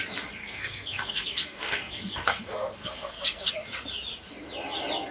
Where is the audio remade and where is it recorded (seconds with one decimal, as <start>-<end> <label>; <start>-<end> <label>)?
0.0-0.4 recorded; 0.4-3.5 remade; 3.5-5.1 recorded

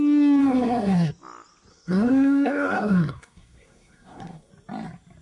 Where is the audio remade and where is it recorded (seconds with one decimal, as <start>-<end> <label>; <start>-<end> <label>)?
0.0-0.4 recorded; 0.4-1.1 remade; 1.1-1.7 recorded; 1.7-4.5 remade; 4.5-5.2 recorded

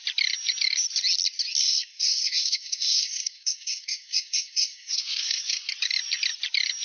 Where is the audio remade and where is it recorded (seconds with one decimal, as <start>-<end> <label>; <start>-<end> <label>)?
0.0-1.6 recorded; 1.6-5.7 remade; 5.7-6.8 recorded

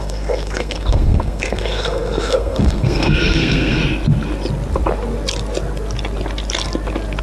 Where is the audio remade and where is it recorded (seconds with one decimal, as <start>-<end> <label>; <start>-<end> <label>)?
0.0-3.8 remade; 3.8-7.2 recorded

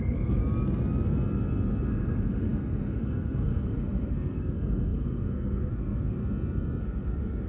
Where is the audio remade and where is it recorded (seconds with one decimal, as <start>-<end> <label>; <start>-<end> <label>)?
0.0-0.4 remade; 0.4-1.9 recorded; 1.9-6.2 remade; 6.2-6.8 recorded; 6.8-7.5 remade

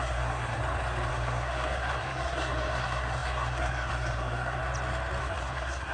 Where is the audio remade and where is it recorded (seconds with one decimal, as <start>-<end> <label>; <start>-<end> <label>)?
0.0-0.6 remade; 0.6-1.1 recorded; 1.1-4.6 remade; 4.6-5.2 recorded; 5.2-5.9 remade

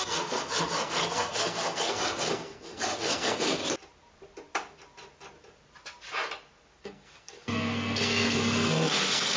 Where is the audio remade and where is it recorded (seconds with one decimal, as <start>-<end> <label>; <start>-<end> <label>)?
0.0-3.6 remade; 3.6-6.8 recorded; 6.8-9.4 remade